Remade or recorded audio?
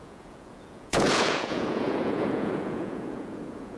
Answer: remade